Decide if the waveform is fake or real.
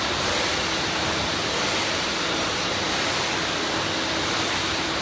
real